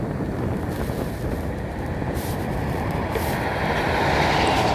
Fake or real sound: real